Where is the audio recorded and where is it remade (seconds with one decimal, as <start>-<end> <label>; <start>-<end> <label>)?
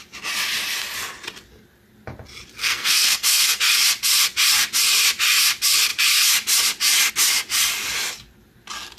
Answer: 0.0-2.6 recorded; 2.6-3.6 remade; 3.6-9.0 recorded